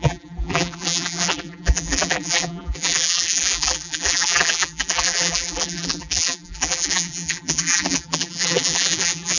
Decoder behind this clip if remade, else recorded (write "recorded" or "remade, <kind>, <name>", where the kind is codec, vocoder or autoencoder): remade, vocoder, BigVGAN v2